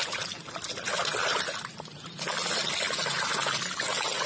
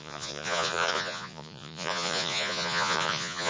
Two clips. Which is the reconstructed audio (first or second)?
second